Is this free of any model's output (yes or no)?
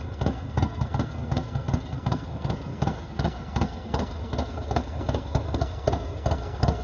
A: no